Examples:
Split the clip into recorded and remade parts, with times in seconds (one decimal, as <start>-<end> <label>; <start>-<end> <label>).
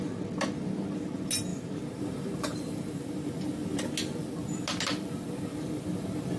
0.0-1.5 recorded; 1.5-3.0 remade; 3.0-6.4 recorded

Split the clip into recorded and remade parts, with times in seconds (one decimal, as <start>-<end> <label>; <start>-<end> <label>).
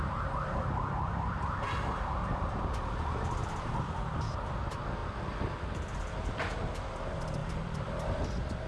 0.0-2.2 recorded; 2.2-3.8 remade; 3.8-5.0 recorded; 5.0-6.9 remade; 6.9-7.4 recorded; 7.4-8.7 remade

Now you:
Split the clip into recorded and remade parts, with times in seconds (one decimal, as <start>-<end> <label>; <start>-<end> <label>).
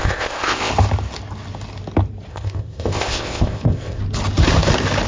0.0-0.7 remade; 0.7-2.3 recorded; 2.3-4.0 remade; 4.0-5.1 recorded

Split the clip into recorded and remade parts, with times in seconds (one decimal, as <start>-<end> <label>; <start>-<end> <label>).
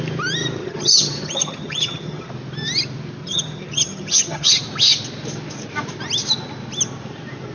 0.0-0.6 recorded; 0.6-2.3 remade; 2.3-3.2 recorded; 3.2-4.5 remade; 4.5-7.5 recorded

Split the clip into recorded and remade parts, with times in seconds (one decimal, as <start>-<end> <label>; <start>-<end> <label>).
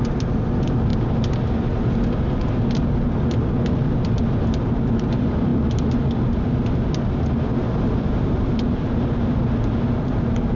0.0-10.6 recorded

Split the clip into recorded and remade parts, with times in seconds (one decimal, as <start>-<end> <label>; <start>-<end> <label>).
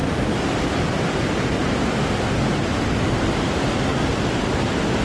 0.0-5.0 recorded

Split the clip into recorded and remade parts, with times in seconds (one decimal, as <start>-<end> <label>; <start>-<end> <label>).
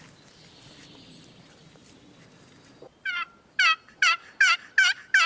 0.0-5.3 recorded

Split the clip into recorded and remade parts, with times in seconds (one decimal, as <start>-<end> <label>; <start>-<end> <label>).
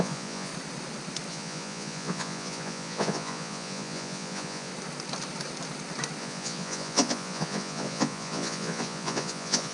0.0-0.5 remade; 0.5-1.3 recorded; 1.3-4.7 remade; 4.7-6.2 recorded; 6.2-9.7 remade